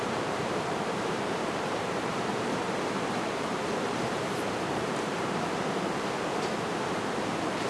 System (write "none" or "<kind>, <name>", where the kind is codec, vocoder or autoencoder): vocoder, BigVGAN v2